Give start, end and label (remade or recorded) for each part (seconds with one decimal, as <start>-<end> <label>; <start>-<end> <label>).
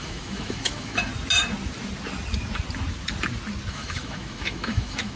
0.0-1.1 remade; 1.1-3.7 recorded; 3.7-5.2 remade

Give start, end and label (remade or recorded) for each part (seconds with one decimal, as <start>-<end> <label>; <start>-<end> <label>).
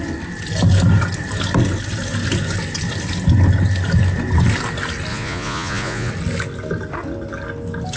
0.0-5.1 recorded; 5.1-6.1 remade; 6.1-8.0 recorded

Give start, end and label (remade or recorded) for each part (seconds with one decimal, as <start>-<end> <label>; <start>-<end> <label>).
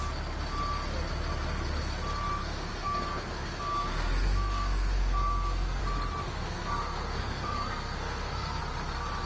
0.0-2.4 recorded; 2.4-5.8 remade; 5.8-6.2 recorded; 6.2-8.6 remade; 8.6-9.3 recorded